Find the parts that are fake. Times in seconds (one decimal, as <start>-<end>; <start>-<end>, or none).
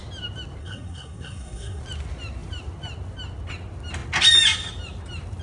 0.6-1.8